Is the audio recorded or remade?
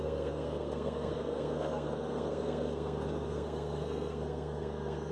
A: remade